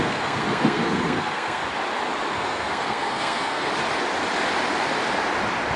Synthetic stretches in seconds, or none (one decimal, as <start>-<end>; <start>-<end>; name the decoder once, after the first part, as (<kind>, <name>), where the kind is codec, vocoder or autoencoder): 0.0-1.6 (codec, SNAC); 2.3-3.7